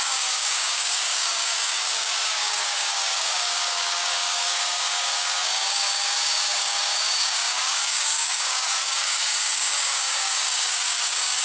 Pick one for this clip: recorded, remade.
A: remade